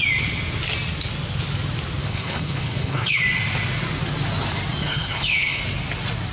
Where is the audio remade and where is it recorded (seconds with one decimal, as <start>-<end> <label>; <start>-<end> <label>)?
0.0-2.0 recorded; 2.0-3.2 remade; 3.2-4.8 recorded; 4.8-5.6 remade; 5.6-6.3 recorded